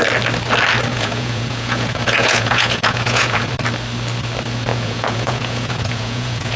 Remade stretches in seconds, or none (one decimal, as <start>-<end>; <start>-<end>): 0.9-3.5; 4.7-6.6